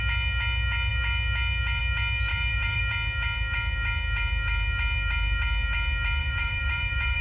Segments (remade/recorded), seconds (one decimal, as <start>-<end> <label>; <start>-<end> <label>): 0.0-2.3 recorded; 2.3-2.8 remade; 2.8-6.2 recorded; 6.2-7.2 remade